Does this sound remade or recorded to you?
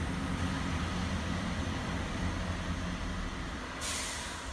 remade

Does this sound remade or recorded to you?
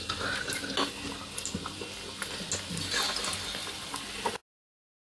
recorded